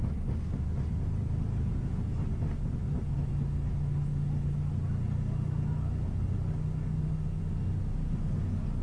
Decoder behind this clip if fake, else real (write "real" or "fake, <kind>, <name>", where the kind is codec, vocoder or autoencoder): real